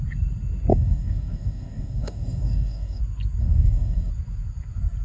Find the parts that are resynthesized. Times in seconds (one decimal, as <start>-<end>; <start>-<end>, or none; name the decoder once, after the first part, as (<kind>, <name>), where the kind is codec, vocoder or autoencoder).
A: 0.7-3.0 (codec, DAC); 3.4-4.1